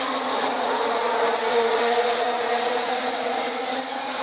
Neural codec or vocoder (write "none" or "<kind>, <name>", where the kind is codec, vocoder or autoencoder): vocoder, Vocos